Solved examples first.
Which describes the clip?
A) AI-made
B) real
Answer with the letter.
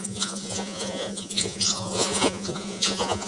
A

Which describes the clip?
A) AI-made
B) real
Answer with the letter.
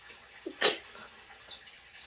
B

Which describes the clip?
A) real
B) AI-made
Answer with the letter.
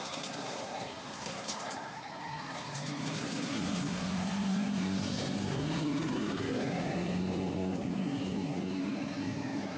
B